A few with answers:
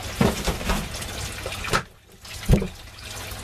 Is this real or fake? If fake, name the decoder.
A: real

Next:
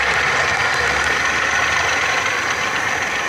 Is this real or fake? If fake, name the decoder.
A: real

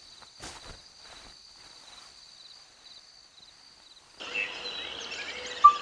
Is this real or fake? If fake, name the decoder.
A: real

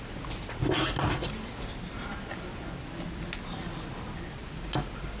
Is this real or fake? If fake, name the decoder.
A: real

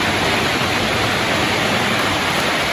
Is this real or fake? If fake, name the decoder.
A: fake, vocoder, BigVGAN v2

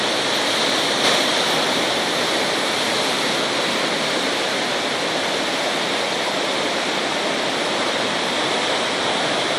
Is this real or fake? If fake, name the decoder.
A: fake, vocoder, BigVGAN v2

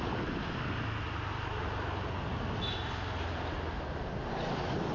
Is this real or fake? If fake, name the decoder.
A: real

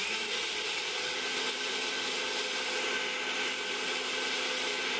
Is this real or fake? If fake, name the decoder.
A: real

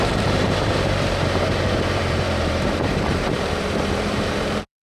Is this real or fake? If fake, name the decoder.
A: fake, vocoder, BigVGAN v2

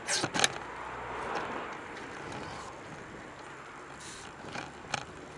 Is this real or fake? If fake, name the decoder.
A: real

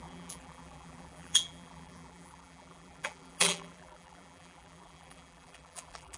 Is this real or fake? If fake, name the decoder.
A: fake, vocoder, BigVGAN v2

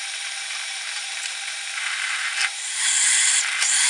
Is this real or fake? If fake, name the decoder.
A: fake, vocoder, BigVGAN v2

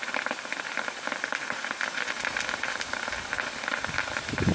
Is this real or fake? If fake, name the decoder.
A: fake, vocoder, BigVGAN v2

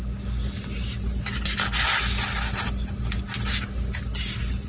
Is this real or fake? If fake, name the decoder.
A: real